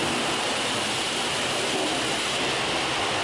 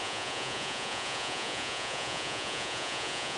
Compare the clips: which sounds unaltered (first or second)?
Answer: first